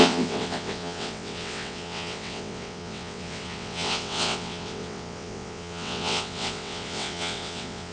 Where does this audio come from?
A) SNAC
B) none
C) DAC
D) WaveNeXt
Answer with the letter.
D